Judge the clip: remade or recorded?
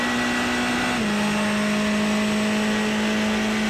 recorded